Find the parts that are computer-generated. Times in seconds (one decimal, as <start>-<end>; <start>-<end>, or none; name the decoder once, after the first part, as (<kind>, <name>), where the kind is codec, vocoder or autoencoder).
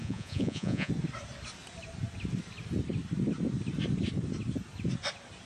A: 0.0-0.9 (vocoder, Vocos)